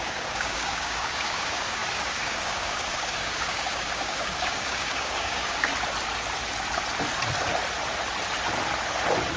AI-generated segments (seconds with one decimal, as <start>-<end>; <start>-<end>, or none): 0.0-5.7